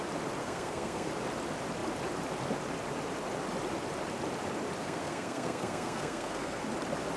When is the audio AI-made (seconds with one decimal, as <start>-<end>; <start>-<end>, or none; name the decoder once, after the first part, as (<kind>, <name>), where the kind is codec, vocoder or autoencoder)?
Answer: 0.4-1.1 (codec, SNAC); 4.8-6.6